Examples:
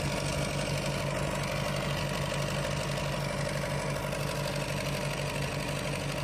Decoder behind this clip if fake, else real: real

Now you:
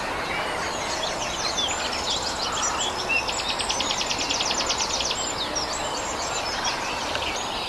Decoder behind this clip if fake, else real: real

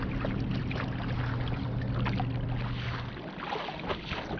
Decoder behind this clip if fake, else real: real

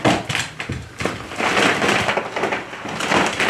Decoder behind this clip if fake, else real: real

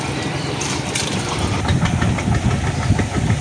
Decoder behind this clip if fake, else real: fake, vocoder, BigVGAN v2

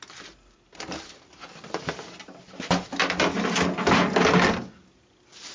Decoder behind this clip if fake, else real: real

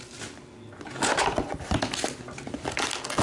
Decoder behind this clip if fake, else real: real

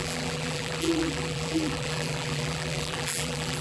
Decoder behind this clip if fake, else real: fake, vocoder, BigVGAN v2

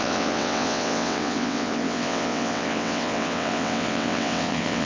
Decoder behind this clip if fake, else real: fake, vocoder, WaveNeXt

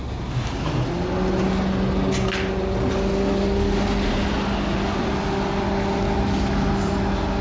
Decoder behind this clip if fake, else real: real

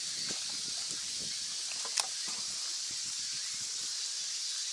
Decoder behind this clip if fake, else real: real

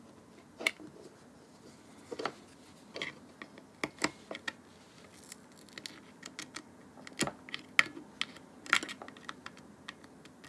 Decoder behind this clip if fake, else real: real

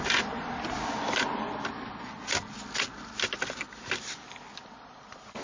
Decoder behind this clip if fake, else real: real